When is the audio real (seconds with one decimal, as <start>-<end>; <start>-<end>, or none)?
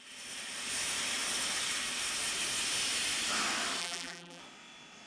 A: 0.0-3.8; 4.4-5.1